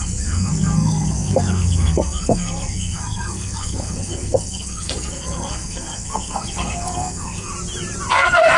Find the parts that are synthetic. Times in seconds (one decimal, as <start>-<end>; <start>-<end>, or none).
0.0-7.5; 8.1-8.6